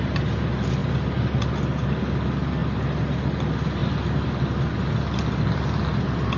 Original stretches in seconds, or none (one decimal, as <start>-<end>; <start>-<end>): 0.0-6.4

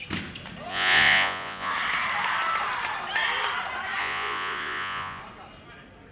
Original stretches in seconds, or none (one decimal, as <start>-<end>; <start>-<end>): 0.0-0.7; 1.7-4.0; 5.2-6.1

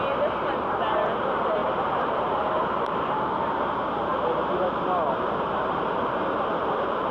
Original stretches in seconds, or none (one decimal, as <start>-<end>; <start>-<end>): 0.0-1.1

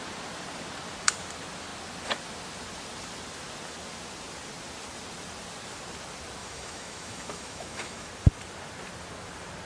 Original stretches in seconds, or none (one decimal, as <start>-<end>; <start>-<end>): 0.0-6.4; 8.1-9.7